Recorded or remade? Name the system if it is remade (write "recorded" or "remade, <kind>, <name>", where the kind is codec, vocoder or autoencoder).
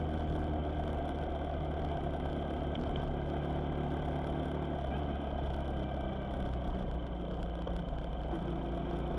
recorded